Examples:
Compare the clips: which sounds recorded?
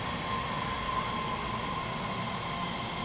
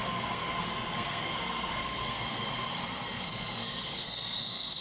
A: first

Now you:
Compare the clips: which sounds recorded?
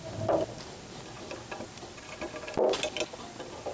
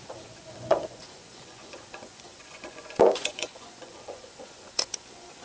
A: first